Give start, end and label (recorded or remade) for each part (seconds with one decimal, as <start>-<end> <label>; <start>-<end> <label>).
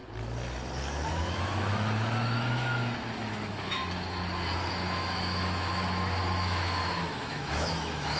0.0-1.1 recorded; 1.1-3.8 remade; 3.8-4.7 recorded; 4.7-8.2 remade